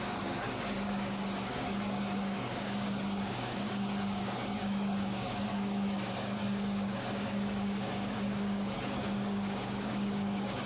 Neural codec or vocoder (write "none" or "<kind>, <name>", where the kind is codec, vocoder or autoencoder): codec, DAC